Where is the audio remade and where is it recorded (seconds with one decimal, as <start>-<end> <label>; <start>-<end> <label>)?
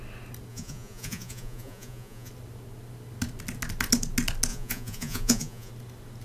0.0-0.5 recorded; 0.5-2.3 remade; 2.3-4.5 recorded; 4.5-5.7 remade; 5.7-6.2 recorded